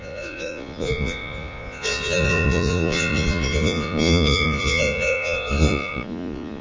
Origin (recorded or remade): remade